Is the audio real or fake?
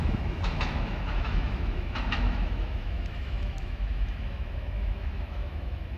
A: fake